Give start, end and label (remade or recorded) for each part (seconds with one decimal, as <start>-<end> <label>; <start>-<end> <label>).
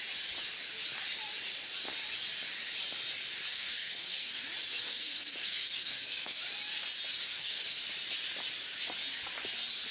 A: 0.0-3.5 recorded; 3.5-4.4 remade; 4.4-4.9 recorded; 4.9-6.4 remade; 6.4-7.3 recorded; 7.3-7.8 remade; 7.8-9.9 recorded